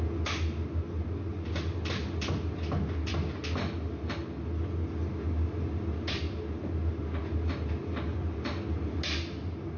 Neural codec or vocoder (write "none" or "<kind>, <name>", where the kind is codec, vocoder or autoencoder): none